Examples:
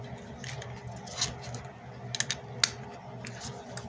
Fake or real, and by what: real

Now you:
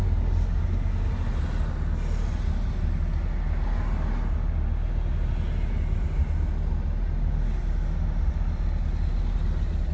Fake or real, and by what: real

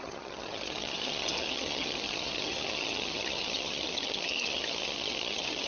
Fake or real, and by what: fake, vocoder, HiFi-GAN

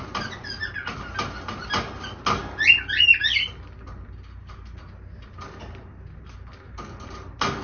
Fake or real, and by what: real